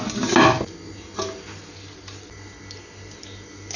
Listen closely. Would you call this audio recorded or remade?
recorded